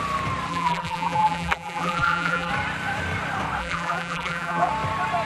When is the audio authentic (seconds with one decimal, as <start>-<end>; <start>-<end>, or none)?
0.0-0.5; 2.5-3.6; 4.7-5.3